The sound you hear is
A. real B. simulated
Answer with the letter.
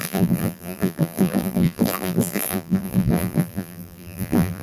B